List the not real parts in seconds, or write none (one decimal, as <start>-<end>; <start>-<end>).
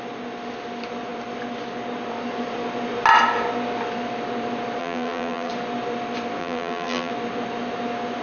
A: 4.8-5.5; 6.4-7.1